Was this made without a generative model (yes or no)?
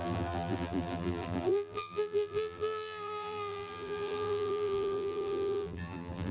no